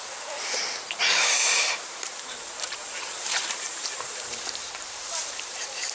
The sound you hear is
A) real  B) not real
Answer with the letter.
B